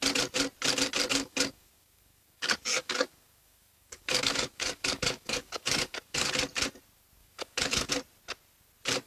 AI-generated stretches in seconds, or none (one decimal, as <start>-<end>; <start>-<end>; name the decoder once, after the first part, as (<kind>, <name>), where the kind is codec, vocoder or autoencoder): 1.1-6.3 (codec, DAC); 7.2-7.9